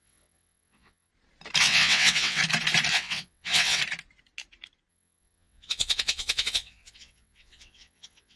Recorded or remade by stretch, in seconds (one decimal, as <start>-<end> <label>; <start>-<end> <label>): 0.0-1.1 remade; 1.1-1.6 recorded; 1.6-2.4 remade; 2.4-2.9 recorded; 2.9-3.8 remade; 3.8-4.9 recorded; 4.9-8.4 remade